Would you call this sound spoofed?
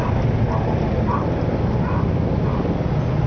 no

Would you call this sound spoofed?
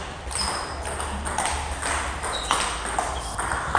no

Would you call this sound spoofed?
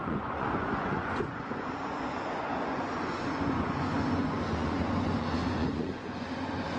yes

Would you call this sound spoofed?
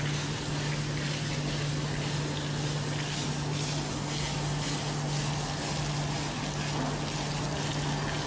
no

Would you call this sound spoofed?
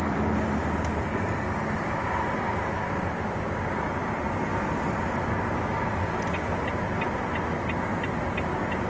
no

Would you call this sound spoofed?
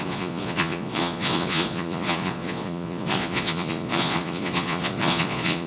yes